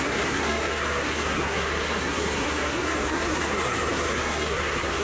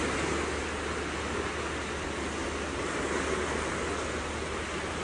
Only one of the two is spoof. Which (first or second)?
first